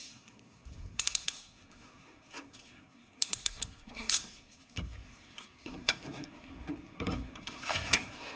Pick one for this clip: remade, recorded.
remade